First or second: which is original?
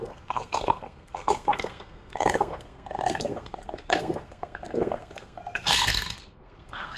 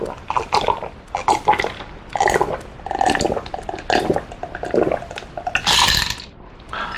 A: second